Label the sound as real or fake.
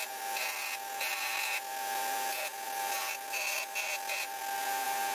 real